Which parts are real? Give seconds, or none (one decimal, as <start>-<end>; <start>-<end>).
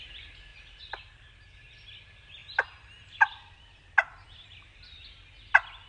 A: 0.0-0.5; 1.1-5.9